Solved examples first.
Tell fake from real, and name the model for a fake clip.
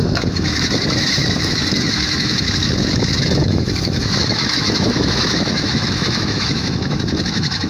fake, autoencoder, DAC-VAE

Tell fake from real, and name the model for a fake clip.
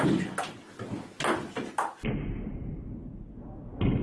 real